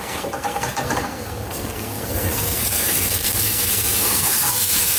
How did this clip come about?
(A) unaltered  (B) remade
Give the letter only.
B